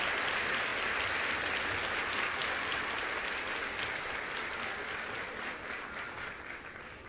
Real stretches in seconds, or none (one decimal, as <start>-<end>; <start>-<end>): 0.0-7.1